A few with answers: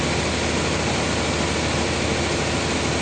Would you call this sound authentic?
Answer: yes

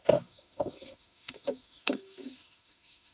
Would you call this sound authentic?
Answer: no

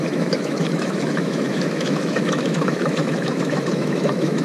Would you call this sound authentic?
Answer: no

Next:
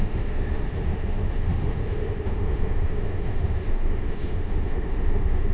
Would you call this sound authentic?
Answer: no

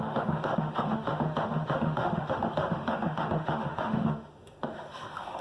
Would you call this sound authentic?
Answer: no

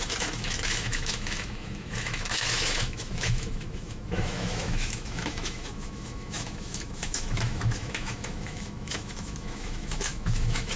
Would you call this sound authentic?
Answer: no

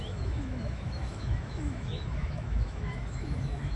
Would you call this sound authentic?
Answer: no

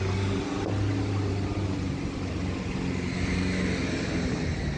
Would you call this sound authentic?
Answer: yes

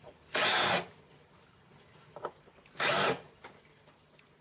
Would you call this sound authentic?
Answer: yes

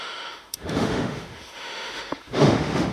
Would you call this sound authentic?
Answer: no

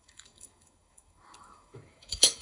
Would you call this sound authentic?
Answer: no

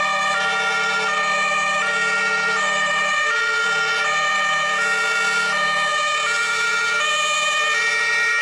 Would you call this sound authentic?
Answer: yes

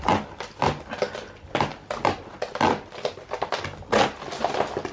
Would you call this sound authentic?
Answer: yes